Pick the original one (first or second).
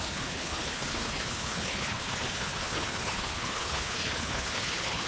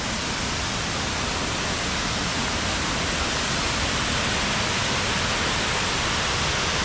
second